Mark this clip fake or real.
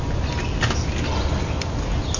real